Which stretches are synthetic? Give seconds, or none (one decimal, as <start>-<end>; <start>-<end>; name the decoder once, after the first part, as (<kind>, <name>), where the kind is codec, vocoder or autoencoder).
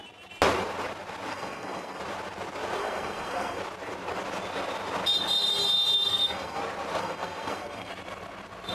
1.3-2.0 (codec, SNAC); 2.8-3.6; 6.1-6.6; 7.0-7.9